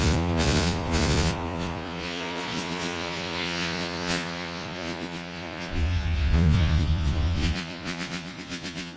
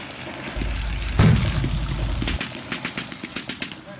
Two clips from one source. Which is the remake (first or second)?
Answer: first